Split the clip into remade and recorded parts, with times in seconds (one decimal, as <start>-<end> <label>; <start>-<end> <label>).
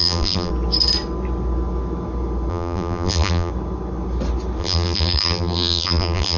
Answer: 0.0-0.5 remade; 0.5-2.5 recorded; 2.5-3.5 remade; 3.5-4.6 recorded; 4.6-6.4 remade